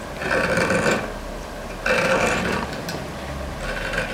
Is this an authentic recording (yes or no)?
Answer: yes